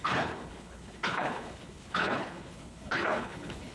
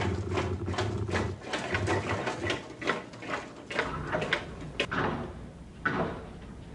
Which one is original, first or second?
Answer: second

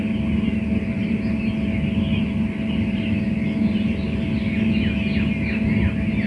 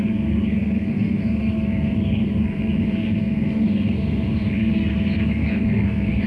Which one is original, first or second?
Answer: first